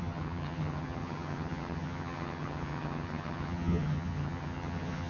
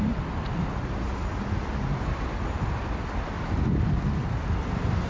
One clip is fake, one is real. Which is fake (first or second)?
first